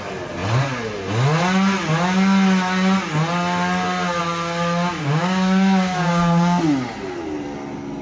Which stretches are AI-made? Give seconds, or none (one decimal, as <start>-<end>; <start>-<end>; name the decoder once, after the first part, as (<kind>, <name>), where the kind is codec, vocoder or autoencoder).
5.0-6.6 (codec, DAC)